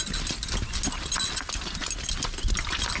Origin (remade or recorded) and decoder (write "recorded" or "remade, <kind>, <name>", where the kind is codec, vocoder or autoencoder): recorded